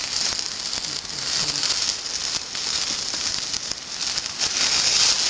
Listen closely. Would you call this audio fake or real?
real